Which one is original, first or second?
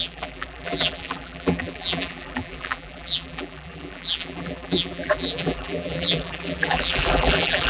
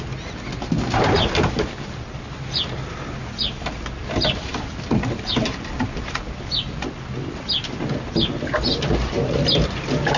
second